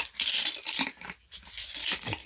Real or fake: fake